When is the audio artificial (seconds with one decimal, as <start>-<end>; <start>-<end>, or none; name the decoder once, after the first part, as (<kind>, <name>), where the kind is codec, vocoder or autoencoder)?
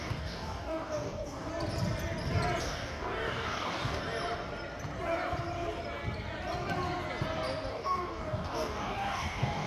0.0-1.5 (codec, DAC); 2.6-4.0; 7.7-9.7